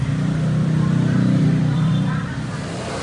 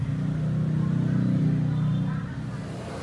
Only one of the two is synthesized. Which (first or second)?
first